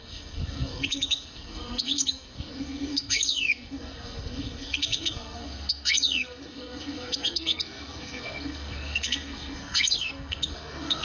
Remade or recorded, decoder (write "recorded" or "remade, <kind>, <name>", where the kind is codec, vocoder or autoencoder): remade, codec, SNAC